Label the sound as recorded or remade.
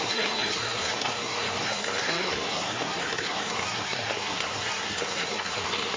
remade